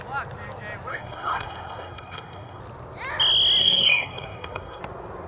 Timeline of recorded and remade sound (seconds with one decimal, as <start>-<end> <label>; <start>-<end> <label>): 0.0-0.9 recorded; 0.9-2.6 remade; 2.6-3.6 recorded; 3.6-4.8 remade; 4.8-5.3 recorded